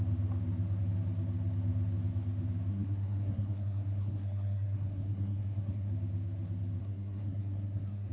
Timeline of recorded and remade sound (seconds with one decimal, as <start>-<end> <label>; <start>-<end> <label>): 0.0-2.7 recorded; 2.7-5.9 remade; 5.9-6.8 recorded; 6.8-8.1 remade